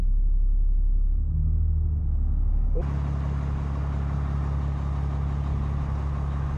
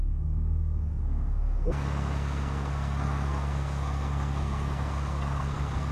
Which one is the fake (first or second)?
second